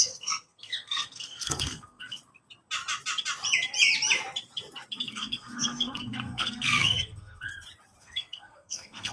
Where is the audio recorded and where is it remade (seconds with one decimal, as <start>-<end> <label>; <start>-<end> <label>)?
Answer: 0.0-2.2 remade; 2.2-5.0 recorded; 5.0-7.5 remade; 7.5-8.0 recorded; 8.0-9.1 remade

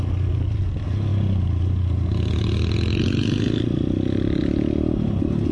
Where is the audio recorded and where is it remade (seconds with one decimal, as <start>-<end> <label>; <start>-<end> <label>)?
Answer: 0.0-5.5 recorded

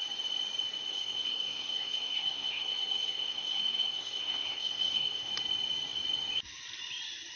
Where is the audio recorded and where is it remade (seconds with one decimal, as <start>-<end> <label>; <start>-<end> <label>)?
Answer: 0.0-0.9 recorded; 0.9-5.3 remade; 5.3-7.4 recorded

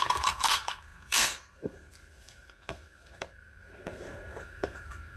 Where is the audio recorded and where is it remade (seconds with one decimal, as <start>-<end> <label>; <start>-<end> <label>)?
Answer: 0.0-5.2 remade

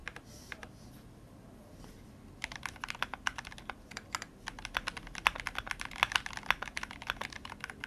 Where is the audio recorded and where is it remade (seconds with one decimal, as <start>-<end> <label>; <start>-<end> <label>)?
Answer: 0.0-7.9 recorded

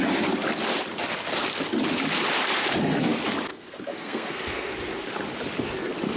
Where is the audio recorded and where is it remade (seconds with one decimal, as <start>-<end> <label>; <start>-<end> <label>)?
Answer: 0.0-3.5 recorded; 3.5-4.7 remade; 4.7-6.2 recorded

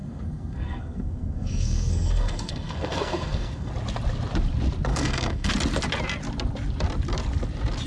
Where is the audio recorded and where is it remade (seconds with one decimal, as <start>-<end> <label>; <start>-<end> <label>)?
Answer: 0.0-3.7 remade; 3.7-4.9 recorded; 4.9-5.5 remade; 5.5-7.9 recorded